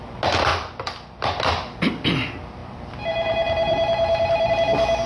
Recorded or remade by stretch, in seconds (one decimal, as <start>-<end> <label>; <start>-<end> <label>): 0.0-0.5 recorded; 0.5-1.2 remade; 1.2-2.6 recorded; 2.6-4.5 remade; 4.5-5.1 recorded